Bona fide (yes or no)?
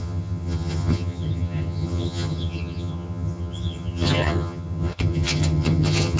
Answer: no